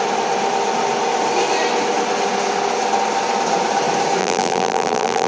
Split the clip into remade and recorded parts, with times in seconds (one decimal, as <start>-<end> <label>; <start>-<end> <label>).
0.0-4.2 recorded; 4.2-5.3 remade